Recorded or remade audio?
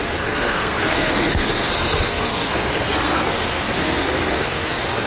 remade